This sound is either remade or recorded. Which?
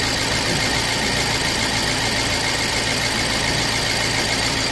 recorded